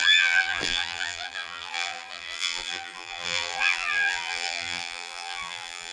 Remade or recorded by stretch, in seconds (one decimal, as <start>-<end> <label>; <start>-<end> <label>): 0.0-5.9 remade